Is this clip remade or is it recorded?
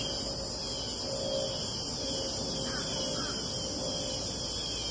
recorded